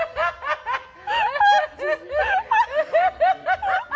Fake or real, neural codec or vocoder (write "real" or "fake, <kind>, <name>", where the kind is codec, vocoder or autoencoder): real